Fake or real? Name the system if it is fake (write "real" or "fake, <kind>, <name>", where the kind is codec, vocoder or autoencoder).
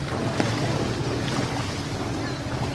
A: real